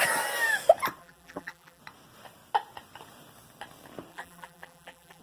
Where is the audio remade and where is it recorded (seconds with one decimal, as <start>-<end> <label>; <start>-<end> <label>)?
0.0-1.0 recorded; 1.0-1.8 remade; 1.8-4.1 recorded; 4.1-5.2 remade